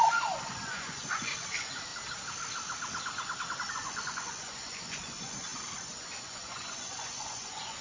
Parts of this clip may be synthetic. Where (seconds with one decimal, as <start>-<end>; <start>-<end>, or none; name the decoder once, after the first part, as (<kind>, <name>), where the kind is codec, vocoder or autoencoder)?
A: 0.0-1.9 (vocoder, Vocos); 3.7-7.8